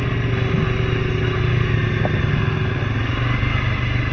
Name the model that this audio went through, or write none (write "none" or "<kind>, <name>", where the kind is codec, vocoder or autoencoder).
none